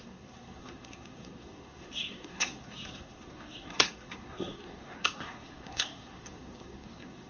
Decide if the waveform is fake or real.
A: fake